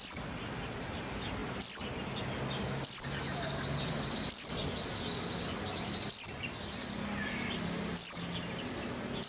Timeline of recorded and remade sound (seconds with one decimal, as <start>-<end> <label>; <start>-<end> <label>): 0.0-9.3 recorded